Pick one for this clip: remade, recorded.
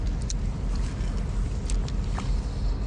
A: recorded